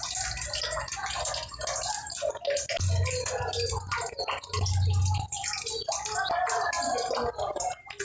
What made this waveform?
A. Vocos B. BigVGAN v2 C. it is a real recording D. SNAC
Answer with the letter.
C